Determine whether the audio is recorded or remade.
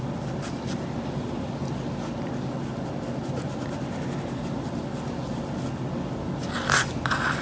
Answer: recorded